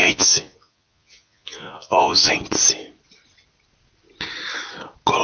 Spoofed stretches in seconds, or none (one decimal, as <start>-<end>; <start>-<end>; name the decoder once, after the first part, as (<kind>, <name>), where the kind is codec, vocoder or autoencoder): 0.0-2.3 (vocoder, Vocos)